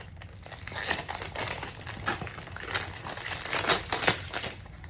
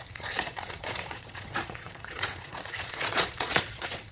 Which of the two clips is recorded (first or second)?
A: first